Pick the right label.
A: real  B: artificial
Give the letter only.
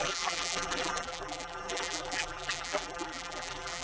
B